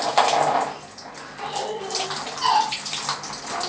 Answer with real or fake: real